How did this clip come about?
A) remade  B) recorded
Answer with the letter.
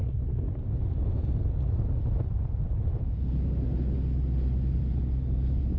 B